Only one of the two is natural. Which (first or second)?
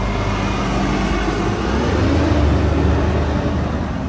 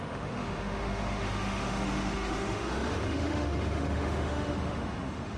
first